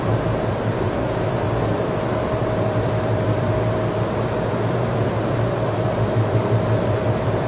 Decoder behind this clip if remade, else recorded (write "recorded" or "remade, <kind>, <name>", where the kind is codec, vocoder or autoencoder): remade, vocoder, BigVGAN v2